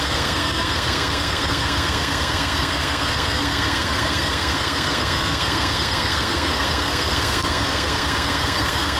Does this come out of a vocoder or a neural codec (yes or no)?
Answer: yes